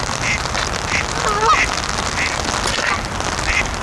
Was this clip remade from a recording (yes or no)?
no